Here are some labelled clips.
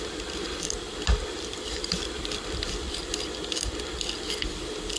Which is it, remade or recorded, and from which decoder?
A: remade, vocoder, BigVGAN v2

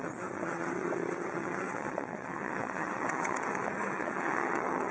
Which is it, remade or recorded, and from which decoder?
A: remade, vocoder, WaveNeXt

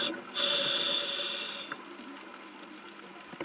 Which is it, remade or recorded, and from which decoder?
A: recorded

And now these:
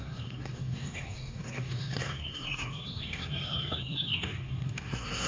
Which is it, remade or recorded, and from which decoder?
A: remade, codec, SNAC